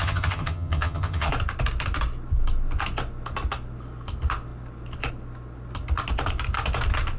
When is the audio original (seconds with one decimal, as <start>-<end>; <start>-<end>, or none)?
1.3-7.2